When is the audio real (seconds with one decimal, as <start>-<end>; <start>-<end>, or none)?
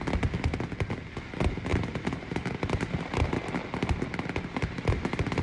0.0-1.7; 3.4-5.4